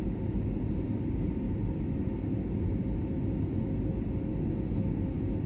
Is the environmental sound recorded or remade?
recorded